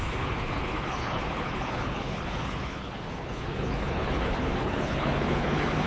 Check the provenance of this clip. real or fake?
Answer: fake